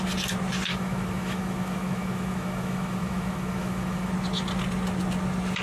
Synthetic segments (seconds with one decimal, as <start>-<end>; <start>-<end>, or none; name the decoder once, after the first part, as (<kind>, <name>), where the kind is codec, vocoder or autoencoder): 0.7-4.1 (autoencoder, DAC-VAE)